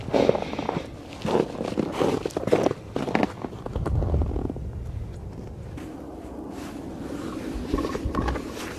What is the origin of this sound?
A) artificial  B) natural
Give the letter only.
B